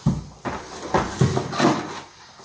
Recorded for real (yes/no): yes